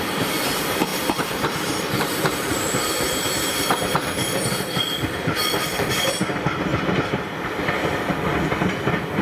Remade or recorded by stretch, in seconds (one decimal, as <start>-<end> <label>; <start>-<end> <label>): 0.0-0.9 recorded; 0.9-6.1 remade; 6.1-6.7 recorded; 6.7-7.6 remade; 7.6-9.2 recorded